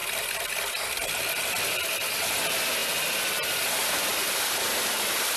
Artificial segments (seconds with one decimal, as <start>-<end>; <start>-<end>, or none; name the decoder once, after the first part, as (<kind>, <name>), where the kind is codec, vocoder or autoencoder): 2.8-5.4 (vocoder, BigVGAN v2)